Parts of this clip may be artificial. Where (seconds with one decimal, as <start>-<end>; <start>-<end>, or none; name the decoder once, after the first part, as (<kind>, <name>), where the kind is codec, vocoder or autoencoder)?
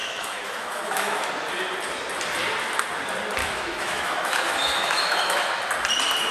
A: 0.0-1.3 (autoencoder, DAC-VAE); 3.4-5.6